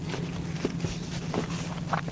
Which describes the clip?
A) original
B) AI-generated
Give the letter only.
A